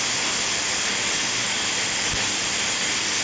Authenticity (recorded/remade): recorded